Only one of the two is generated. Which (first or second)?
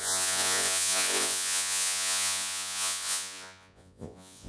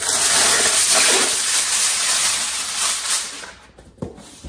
first